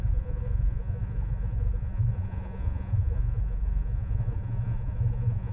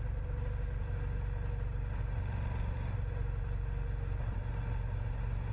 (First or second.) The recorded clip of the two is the second